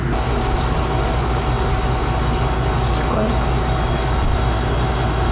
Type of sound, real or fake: real